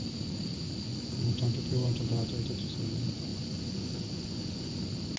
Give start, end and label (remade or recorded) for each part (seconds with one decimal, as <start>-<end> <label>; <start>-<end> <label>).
0.0-0.9 recorded; 0.9-2.3 remade; 2.3-3.3 recorded; 3.3-4.8 remade; 4.8-5.2 recorded